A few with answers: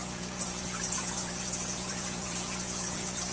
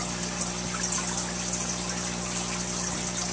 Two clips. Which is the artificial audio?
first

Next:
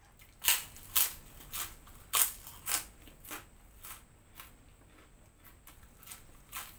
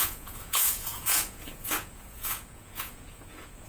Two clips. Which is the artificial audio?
second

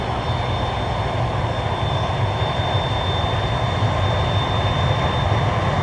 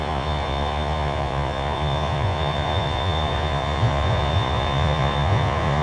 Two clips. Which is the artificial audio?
second